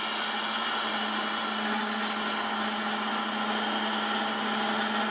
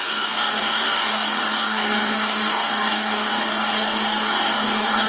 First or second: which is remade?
second